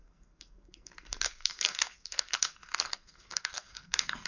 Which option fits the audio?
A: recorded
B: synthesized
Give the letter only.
B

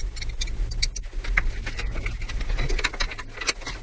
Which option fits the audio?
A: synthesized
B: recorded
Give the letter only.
B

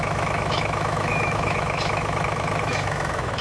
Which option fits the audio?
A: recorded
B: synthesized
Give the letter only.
B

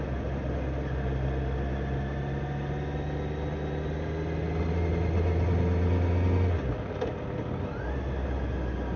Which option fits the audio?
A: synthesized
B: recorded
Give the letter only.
B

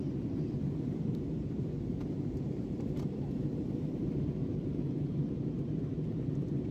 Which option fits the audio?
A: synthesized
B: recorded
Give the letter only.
A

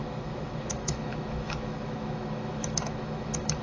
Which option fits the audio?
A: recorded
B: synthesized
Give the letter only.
B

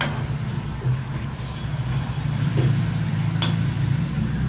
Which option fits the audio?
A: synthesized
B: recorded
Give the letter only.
B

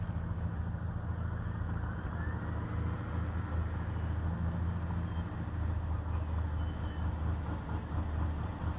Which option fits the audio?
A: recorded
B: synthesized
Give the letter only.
A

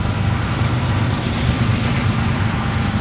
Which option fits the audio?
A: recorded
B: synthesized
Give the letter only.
B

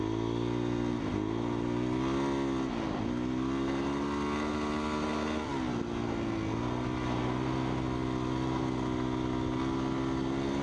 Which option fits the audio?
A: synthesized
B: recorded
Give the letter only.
B